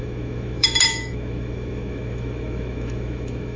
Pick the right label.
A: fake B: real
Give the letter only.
A